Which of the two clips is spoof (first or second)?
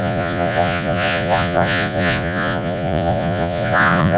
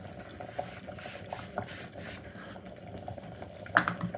first